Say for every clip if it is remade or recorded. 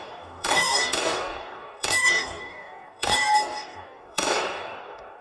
remade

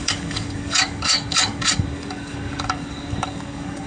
remade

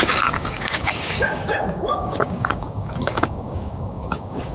remade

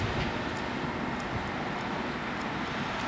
recorded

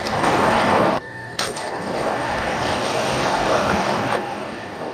remade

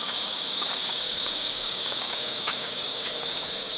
remade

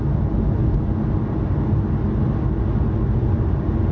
recorded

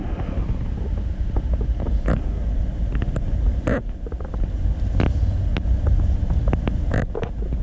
recorded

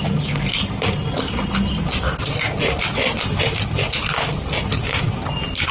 recorded